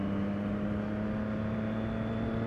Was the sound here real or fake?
real